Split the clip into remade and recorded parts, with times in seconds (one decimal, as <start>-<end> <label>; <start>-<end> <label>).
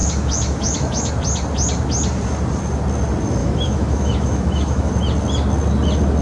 0.0-1.1 remade; 1.1-3.4 recorded; 3.4-4.9 remade; 4.9-6.2 recorded